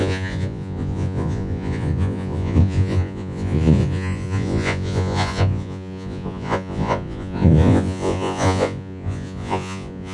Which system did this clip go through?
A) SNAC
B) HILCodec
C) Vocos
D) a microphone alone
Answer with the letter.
C